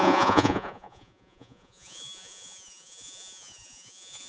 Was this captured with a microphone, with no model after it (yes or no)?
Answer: no